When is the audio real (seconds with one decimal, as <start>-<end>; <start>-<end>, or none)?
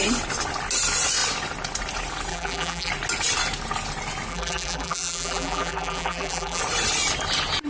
0.0-2.3; 2.9-4.3; 6.6-7.7